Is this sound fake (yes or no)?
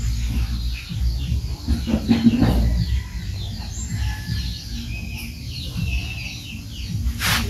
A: no